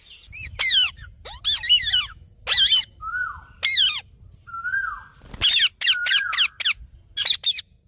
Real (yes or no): yes